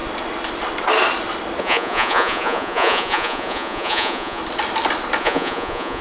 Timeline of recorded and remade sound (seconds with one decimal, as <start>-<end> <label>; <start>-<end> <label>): 0.0-1.6 recorded; 1.6-4.4 remade; 4.4-5.2 recorded; 5.2-6.0 remade